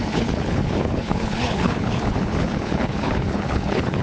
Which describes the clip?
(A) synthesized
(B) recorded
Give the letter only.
A